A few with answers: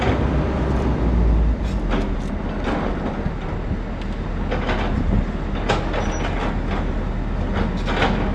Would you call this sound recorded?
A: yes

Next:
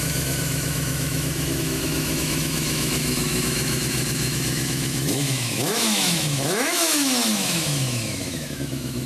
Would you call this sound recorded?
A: no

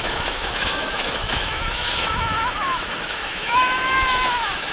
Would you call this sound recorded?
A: no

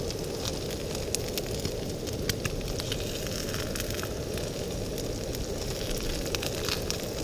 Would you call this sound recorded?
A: yes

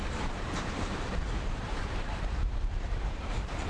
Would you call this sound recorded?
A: no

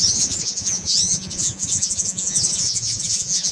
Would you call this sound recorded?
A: no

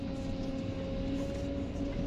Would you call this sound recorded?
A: yes